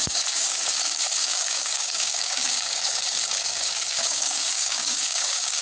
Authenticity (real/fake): fake